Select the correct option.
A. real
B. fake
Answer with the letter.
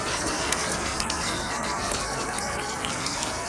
B